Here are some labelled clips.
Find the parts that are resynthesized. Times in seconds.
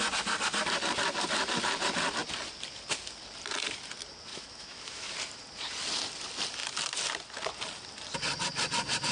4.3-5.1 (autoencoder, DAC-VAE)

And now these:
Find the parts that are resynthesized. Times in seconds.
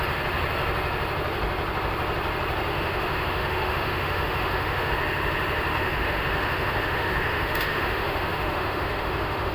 2.7-4.9 (autoencoder, DAC-VAE); 5.7-9.5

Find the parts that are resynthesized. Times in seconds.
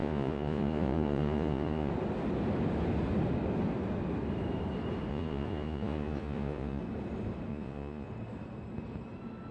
0.0-1.9 (vocoder, Vocos); 5.1-6.8; 7.5-8.1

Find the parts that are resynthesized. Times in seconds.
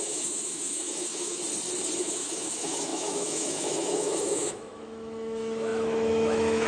0.0-1.4 (autoencoder, DAC-VAE); 2.0-6.7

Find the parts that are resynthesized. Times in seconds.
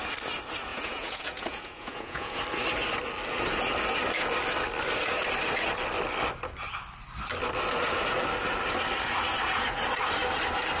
0.7-2.4 (vocoder, Vocos)